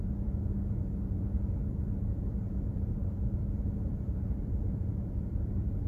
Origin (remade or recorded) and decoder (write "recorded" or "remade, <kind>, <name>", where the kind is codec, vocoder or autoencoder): remade, vocoder, BigVGAN v2